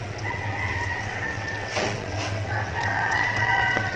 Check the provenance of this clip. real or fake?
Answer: fake